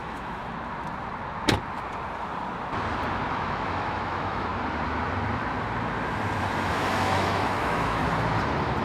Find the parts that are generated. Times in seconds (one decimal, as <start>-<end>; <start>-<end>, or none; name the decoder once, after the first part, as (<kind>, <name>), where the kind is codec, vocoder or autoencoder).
0.0-0.4 (autoencoder, DAC-VAE); 3.3-4.5; 6.7-8.0